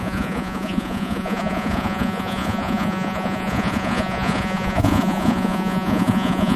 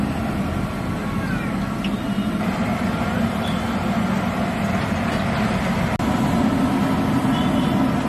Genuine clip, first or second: second